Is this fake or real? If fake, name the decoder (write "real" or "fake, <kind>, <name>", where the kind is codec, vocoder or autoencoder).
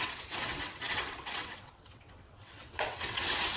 fake, vocoder, WaveNeXt